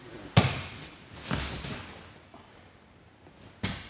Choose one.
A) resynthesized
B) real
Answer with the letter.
B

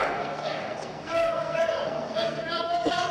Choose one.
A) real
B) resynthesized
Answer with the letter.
B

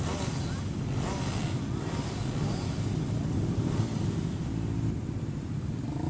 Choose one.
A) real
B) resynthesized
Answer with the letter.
A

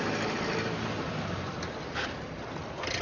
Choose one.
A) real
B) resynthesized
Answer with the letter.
A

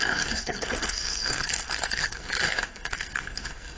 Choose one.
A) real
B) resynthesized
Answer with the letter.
B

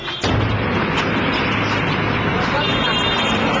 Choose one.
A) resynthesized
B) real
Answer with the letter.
B